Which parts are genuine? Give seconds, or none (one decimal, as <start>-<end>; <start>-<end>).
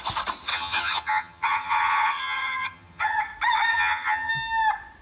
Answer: 0.0-0.5; 3.2-3.7; 4.3-5.0